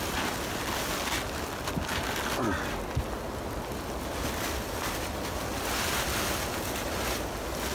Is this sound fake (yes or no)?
no